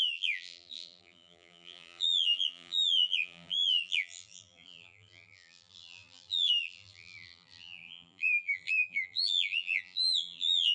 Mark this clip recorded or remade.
remade